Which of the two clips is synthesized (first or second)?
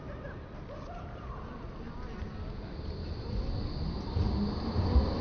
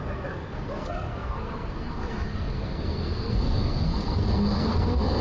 second